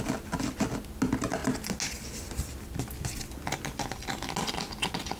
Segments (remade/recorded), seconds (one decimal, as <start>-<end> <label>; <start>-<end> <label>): 0.0-5.2 recorded